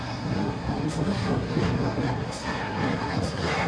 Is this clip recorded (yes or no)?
no